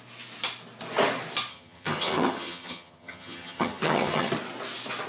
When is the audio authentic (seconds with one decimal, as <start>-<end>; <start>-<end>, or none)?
0.0-1.5; 4.3-5.1